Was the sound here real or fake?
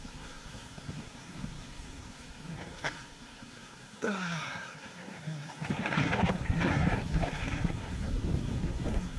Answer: fake